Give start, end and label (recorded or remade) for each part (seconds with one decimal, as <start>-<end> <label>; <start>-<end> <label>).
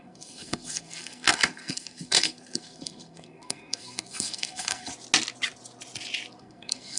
0.0-4.9 remade; 4.9-6.4 recorded; 6.4-7.0 remade